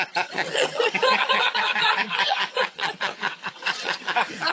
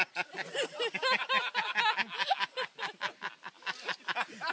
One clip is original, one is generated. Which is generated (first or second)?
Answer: first